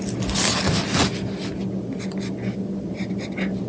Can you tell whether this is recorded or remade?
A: recorded